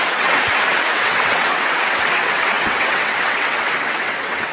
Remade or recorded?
remade